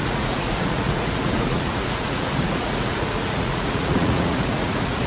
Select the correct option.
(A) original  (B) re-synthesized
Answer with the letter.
B